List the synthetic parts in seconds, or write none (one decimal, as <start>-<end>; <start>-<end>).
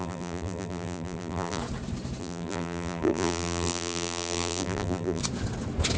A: 0.0-1.6; 2.2-5.2